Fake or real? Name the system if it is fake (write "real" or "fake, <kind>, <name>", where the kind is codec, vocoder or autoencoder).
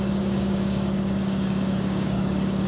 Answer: fake, codec, DAC